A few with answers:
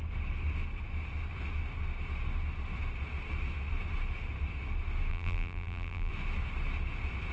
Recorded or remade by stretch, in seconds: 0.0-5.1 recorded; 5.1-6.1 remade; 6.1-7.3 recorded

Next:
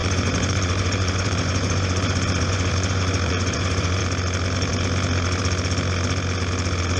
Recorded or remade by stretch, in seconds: 0.0-4.0 remade; 4.0-7.0 recorded